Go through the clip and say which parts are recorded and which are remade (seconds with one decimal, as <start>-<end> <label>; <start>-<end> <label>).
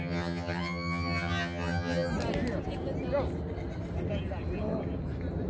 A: 0.0-2.1 remade; 2.1-5.5 recorded